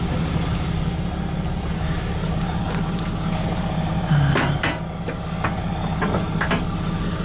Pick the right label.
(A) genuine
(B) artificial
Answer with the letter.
A